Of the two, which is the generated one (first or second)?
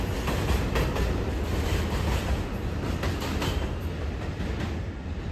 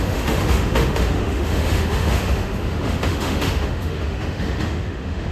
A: second